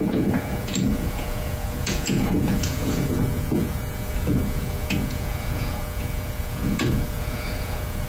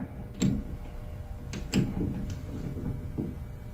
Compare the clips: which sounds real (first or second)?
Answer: second